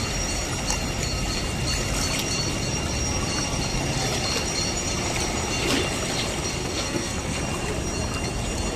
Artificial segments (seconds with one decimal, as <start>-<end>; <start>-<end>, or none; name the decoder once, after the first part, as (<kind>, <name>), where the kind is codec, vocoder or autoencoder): 6.6-7.4 (codec, SNAC)